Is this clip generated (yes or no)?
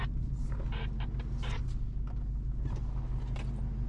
no